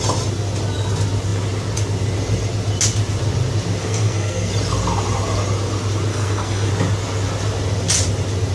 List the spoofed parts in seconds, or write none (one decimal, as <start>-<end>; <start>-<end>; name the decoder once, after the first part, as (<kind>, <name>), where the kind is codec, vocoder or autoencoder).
3.8-4.5 (codec, SNAC); 6.1-6.7